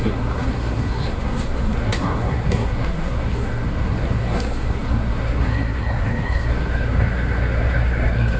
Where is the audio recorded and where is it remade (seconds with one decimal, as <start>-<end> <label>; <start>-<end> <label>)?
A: 0.0-8.4 remade